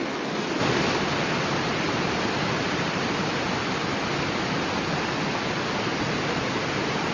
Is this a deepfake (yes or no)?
no